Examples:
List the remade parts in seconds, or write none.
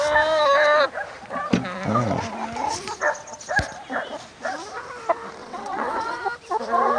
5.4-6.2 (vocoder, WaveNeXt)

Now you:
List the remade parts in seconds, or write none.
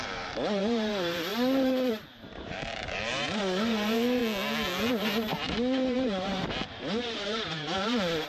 0.0-4.2 (vocoder, BigVGAN v2); 4.9-8.3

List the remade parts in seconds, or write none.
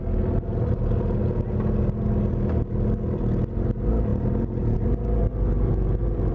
none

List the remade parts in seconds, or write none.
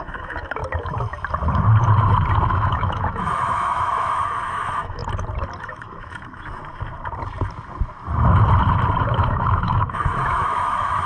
0.0-0.6 (autoencoder, DAC-VAE); 2.5-5.0; 5.6-6.6; 9.0-11.1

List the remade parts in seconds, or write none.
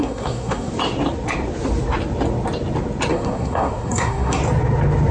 0.0-0.7 (codec, SNAC); 3.1-4.4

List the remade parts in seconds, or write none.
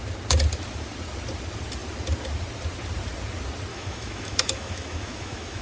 3.7-5.6 (autoencoder, DAC-VAE)